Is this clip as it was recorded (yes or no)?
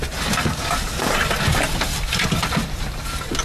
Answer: yes